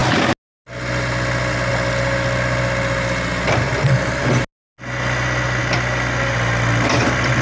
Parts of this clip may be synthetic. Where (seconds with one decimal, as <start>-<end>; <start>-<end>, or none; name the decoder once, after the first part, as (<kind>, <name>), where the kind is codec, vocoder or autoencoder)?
none